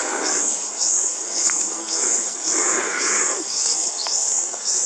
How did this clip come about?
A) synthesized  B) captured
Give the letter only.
A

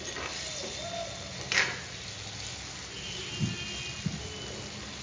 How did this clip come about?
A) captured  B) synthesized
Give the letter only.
A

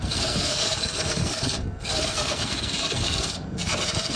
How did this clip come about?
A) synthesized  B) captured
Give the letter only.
A